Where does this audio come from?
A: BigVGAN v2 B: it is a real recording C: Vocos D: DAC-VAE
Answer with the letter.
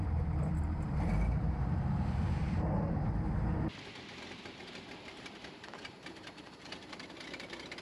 A